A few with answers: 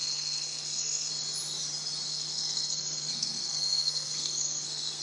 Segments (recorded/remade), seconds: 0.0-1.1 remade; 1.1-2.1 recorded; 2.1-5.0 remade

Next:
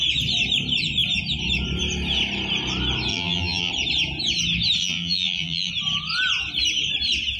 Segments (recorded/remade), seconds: 0.0-3.1 recorded; 3.1-3.7 remade; 3.7-4.8 recorded; 4.8-5.7 remade; 5.7-7.4 recorded

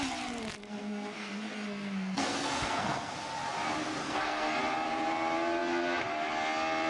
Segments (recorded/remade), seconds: 0.0-0.6 recorded; 0.6-3.1 remade; 3.1-4.0 recorded; 4.0-4.6 remade; 4.6-6.9 recorded

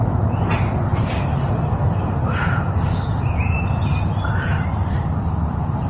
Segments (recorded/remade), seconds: 0.0-4.3 recorded; 4.3-5.1 remade; 5.1-5.9 recorded